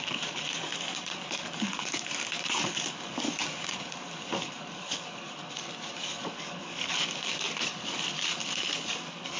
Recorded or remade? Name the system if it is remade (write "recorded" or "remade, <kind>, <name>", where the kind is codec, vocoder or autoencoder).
remade, codec, DAC